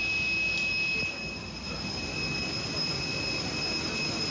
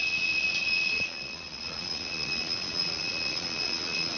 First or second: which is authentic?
first